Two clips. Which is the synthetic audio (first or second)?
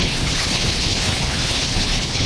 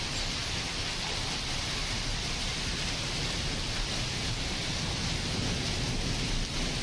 first